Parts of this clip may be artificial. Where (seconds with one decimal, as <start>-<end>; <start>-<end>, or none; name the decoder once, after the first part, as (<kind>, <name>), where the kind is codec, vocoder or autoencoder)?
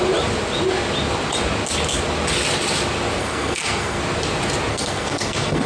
3.2-4.0 (codec, SNAC); 4.7-5.7